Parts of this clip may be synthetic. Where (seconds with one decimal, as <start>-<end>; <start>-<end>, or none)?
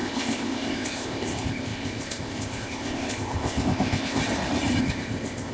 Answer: 0.0-4.2; 4.8-5.5